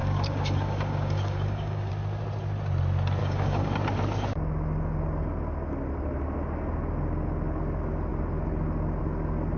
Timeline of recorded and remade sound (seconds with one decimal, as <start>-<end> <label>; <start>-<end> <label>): 0.0-1.9 remade; 1.9-3.2 recorded; 3.2-3.7 remade; 3.7-9.6 recorded